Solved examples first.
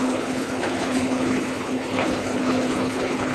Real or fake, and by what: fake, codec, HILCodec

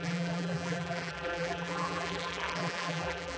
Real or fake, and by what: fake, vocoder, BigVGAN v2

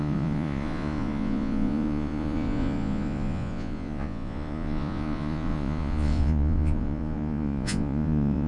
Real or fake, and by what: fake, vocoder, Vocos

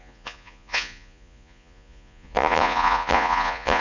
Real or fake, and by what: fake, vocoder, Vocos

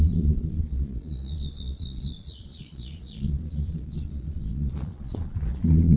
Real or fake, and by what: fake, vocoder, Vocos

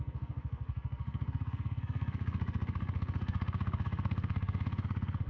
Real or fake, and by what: fake, codec, SNAC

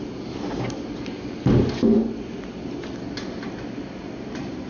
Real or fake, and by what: real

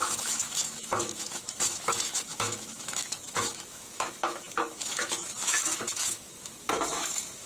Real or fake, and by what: fake, autoencoder, DAC-VAE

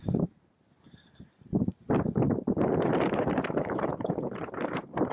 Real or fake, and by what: fake, vocoder, BigVGAN v2